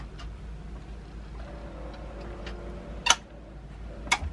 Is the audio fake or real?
real